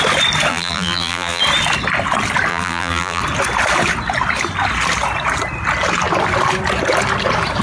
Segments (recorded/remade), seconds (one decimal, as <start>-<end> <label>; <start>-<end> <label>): 0.0-0.5 recorded; 0.5-1.4 remade; 1.4-2.5 recorded; 2.5-3.2 remade; 3.2-7.6 recorded

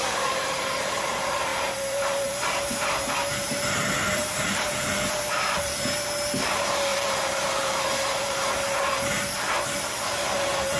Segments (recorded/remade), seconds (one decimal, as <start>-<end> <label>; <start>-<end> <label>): 0.0-10.8 remade

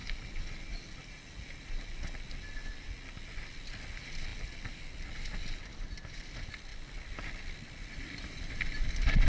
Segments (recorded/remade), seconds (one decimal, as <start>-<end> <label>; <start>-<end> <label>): 0.0-3.0 remade; 3.0-4.3 recorded; 4.3-5.4 remade; 5.4-6.7 recorded; 6.7-8.6 remade; 8.6-9.3 recorded

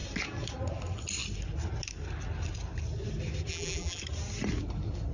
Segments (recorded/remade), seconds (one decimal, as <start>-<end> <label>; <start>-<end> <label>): 0.0-3.5 recorded; 3.5-4.0 remade; 4.0-5.1 recorded

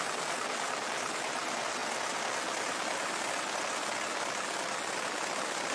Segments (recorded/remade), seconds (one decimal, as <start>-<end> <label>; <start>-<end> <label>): 0.0-5.7 recorded

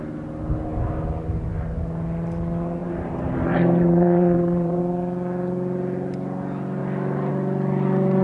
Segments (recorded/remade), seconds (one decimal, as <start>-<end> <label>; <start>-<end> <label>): 0.0-2.8 recorded; 2.8-4.8 remade; 4.8-8.2 recorded